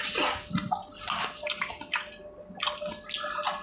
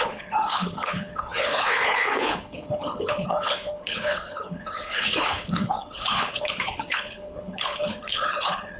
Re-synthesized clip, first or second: second